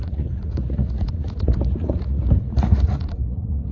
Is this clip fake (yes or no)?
yes